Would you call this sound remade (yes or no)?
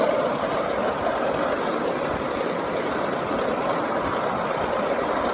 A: no